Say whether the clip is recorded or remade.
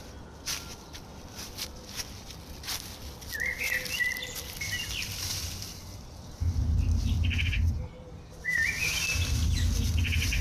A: recorded